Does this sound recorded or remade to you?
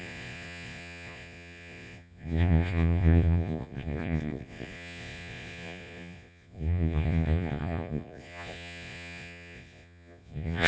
remade